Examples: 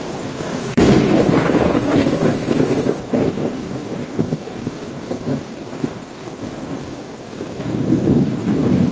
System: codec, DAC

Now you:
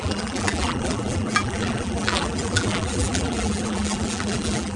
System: vocoder, BigVGAN v2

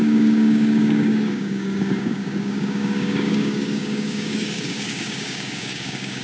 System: codec, DAC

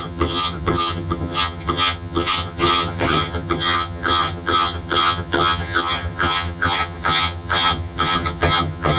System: vocoder, HiFi-GAN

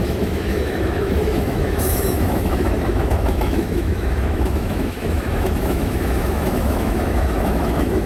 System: autoencoder, DAC-VAE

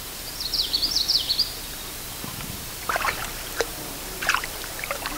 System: vocoder, BigVGAN v2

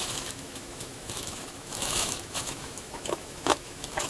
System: autoencoder, DAC-VAE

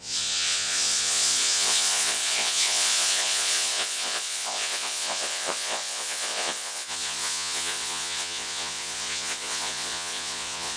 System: vocoder, Vocos